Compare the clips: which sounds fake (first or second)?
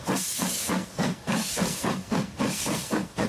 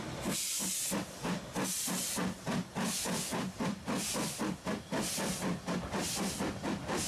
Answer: first